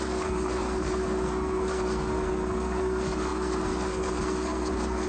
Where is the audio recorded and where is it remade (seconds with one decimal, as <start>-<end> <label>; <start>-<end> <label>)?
0.0-5.1 remade